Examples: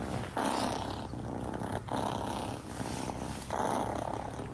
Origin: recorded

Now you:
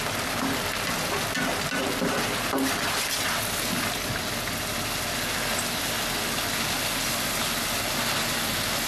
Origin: recorded